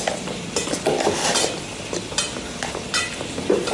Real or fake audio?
real